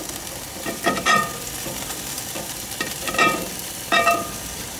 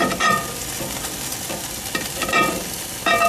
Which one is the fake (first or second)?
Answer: first